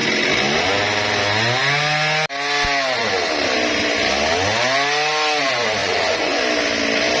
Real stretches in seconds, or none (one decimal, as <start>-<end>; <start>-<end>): 0.0-5.8; 6.4-7.2